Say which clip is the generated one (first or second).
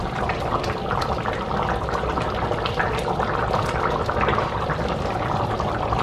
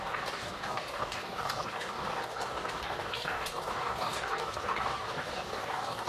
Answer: second